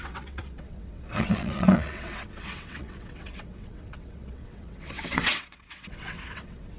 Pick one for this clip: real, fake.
fake